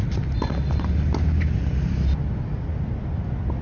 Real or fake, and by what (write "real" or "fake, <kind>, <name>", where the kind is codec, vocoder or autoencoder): real